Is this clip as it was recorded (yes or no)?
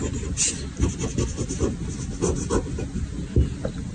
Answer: yes